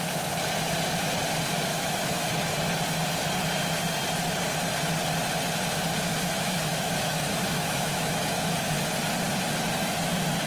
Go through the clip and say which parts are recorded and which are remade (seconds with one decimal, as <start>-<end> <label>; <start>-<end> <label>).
0.0-1.7 recorded; 1.7-2.3 remade; 2.3-6.1 recorded; 6.1-8.9 remade; 8.9-10.5 recorded